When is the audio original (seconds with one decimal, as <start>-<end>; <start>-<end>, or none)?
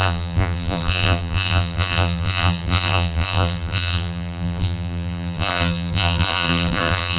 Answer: none